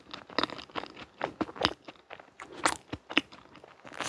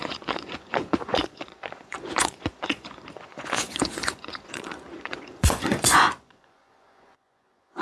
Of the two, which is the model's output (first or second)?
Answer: second